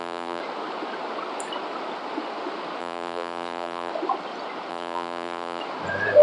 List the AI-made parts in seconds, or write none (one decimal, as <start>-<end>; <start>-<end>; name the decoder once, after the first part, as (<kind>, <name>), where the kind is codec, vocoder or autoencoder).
0.0-0.4 (vocoder, BigVGAN v2); 2.8-3.9; 4.7-5.6